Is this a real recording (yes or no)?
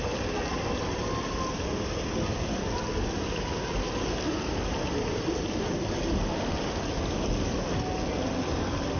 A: yes